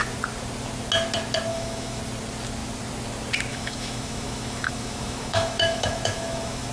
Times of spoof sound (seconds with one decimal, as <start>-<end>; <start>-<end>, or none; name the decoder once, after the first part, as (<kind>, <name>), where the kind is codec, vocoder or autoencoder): 1.5-2.0 (autoencoder, DAC-VAE); 3.5-6.7